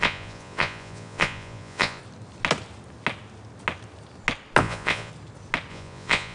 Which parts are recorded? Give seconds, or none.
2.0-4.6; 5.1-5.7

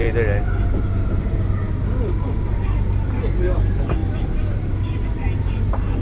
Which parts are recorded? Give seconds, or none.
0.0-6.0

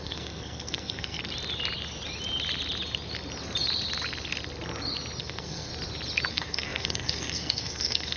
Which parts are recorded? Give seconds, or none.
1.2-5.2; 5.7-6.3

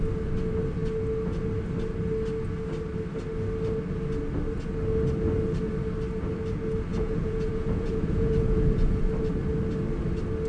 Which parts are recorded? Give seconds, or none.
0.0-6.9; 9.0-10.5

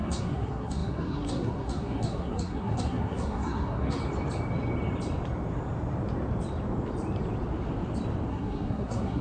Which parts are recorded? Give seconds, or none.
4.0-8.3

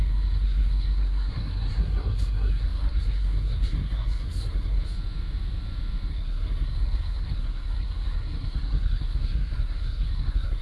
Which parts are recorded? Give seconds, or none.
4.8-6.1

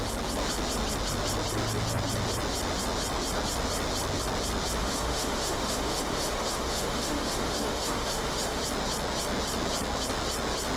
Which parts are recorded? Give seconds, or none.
0.0-4.8; 8.6-10.8

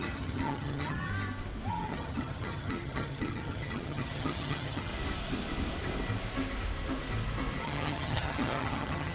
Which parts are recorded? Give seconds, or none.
1.1-1.7; 4.9-7.6